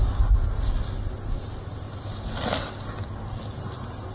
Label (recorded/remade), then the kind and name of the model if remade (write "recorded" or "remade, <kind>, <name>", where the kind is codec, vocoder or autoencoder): recorded